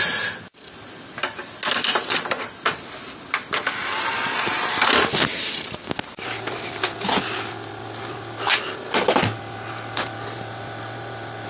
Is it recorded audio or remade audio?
recorded